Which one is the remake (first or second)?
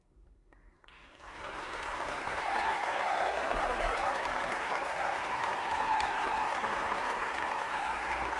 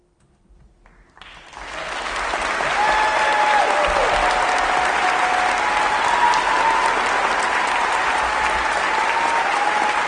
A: first